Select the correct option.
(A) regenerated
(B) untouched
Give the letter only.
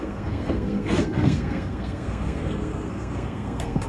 A